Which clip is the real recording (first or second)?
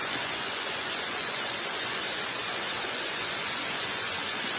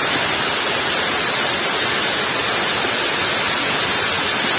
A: second